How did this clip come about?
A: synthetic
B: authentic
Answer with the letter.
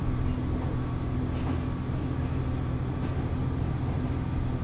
B